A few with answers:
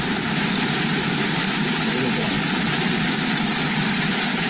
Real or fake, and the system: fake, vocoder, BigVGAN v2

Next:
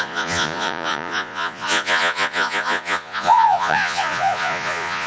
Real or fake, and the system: fake, vocoder, Vocos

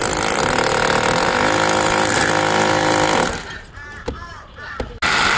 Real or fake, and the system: real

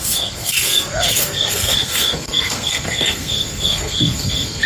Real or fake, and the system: fake, codec, SNAC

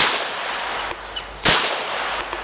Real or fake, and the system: real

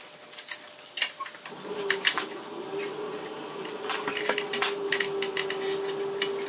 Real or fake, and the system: real